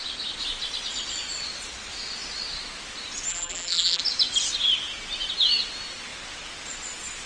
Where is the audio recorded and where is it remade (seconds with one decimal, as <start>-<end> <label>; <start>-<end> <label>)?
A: 0.0-3.3 recorded; 3.3-4.0 remade; 4.0-7.3 recorded